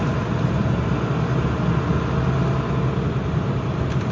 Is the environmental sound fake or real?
real